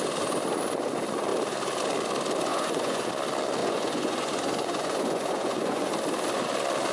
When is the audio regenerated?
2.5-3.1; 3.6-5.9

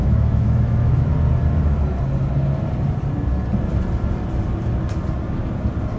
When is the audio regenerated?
0.0-1.1

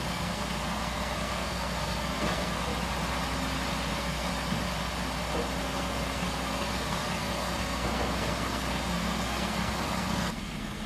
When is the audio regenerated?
0.0-2.7; 3.9-4.3; 5.6-10.9

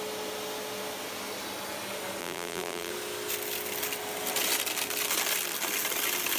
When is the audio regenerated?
2.2-2.9

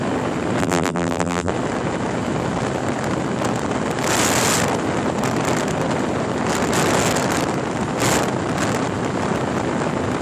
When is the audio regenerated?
0.6-1.5

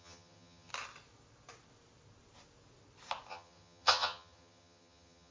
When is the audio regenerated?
0.0-0.7; 3.3-5.3

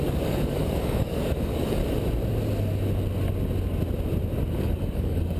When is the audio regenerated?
0.0-1.8; 4.6-5.4

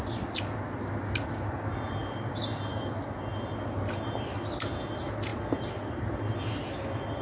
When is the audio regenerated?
none